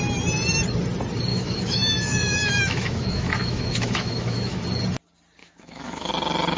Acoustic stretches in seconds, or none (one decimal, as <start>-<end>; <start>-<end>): 0.0-1.3; 4.6-5.4; 6.1-6.6